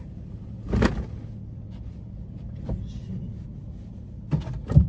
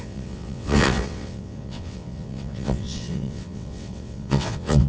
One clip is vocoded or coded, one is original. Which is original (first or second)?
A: first